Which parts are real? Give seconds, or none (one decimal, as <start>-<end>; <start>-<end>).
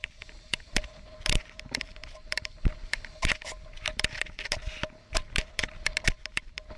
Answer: 0.8-6.8